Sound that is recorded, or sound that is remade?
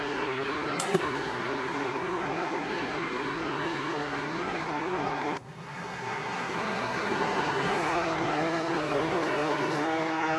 remade